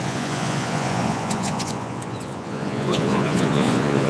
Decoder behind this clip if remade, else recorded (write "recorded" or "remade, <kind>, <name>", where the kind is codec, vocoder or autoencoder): remade, vocoder, Vocos